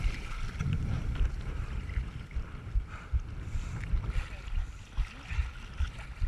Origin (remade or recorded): remade